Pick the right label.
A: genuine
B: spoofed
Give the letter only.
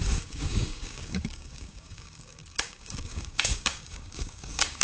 B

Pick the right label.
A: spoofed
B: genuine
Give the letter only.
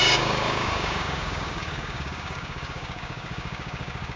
A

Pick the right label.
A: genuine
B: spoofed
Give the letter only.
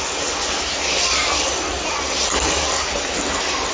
A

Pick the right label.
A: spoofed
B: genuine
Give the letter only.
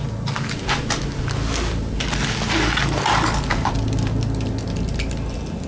B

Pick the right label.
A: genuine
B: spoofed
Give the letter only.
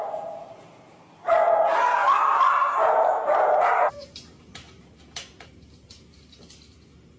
A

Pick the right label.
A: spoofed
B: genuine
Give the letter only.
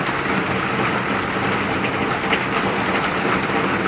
B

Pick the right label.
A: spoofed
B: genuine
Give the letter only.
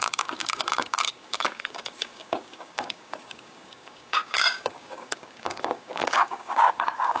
A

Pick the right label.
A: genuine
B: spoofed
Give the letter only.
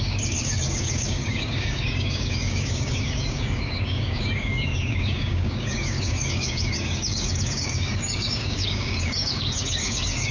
B